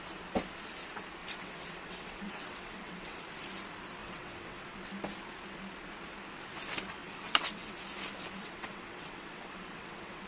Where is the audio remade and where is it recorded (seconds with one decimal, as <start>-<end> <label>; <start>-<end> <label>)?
0.0-1.2 recorded; 1.2-3.2 remade; 3.2-4.0 recorded; 4.0-4.6 remade; 4.6-7.0 recorded; 7.0-7.8 remade; 7.8-8.4 recorded; 8.4-10.3 remade